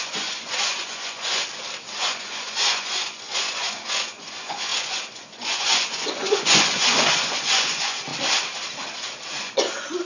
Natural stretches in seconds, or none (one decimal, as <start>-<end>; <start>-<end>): 1.4-2.0; 8.1-9.3

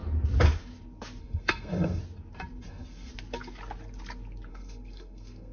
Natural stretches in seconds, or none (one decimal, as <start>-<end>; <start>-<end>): 0.0-1.2; 2.0-2.6; 3.1-4.5